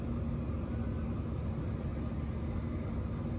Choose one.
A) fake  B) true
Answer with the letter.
B